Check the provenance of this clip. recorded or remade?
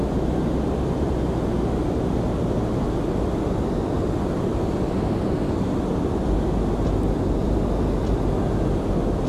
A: recorded